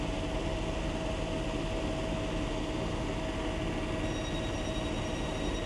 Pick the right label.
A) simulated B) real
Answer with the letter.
B